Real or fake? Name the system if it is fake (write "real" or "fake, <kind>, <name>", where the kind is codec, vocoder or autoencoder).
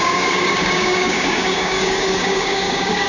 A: fake, codec, DAC